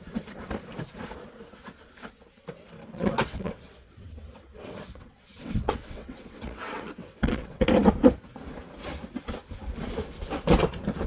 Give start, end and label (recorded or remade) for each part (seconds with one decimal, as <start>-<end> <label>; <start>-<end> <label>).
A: 0.0-2.9 recorded; 2.9-7.7 remade; 7.7-11.1 recorded